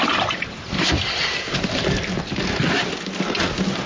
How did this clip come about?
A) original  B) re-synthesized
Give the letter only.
A